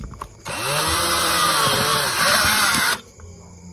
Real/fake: fake